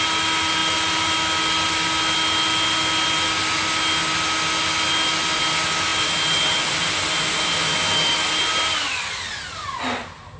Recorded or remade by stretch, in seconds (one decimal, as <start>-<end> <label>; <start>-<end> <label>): 0.0-10.4 recorded

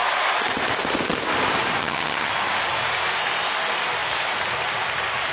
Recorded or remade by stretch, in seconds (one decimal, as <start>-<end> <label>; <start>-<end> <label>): 0.0-1.8 recorded; 1.8-2.3 remade; 2.3-5.3 recorded